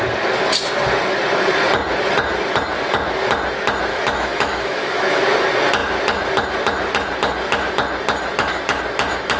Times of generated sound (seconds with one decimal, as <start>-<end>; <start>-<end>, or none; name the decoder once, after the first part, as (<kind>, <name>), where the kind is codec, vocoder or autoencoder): 3.9-5.2 (autoencoder, DAC-VAE)

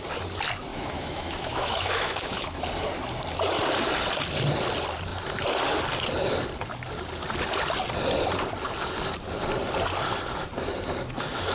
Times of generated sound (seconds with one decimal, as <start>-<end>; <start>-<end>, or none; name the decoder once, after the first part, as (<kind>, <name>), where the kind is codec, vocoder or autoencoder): 0.7-2.6 (autoencoder, DAC-VAE)